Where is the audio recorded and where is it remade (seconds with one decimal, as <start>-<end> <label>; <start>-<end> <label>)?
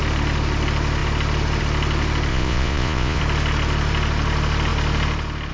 0.0-2.3 recorded; 2.3-3.2 remade; 3.2-5.5 recorded